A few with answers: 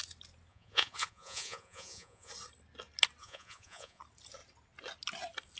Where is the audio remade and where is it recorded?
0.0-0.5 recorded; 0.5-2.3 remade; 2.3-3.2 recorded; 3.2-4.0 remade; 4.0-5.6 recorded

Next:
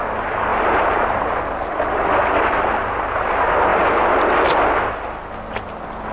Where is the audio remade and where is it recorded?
0.0-0.5 recorded; 0.5-1.4 remade; 1.4-6.1 recorded

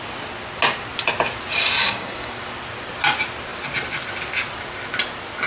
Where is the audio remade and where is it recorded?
0.0-1.8 recorded; 1.8-2.3 remade; 2.3-5.5 recorded

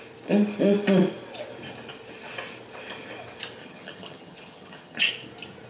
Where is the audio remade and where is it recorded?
0.0-3.6 recorded; 3.6-5.1 remade; 5.1-5.7 recorded

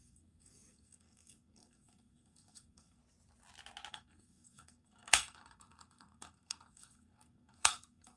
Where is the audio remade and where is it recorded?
0.0-3.0 remade; 3.0-3.9 recorded; 3.9-8.2 remade

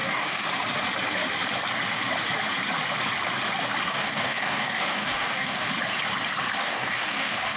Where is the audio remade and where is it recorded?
0.0-0.5 remade; 0.5-3.9 recorded; 3.9-5.7 remade; 5.7-6.6 recorded; 6.6-7.6 remade

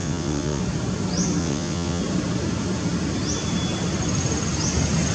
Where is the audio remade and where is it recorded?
0.0-0.6 remade; 0.6-1.4 recorded; 1.4-2.0 remade; 2.0-5.1 recorded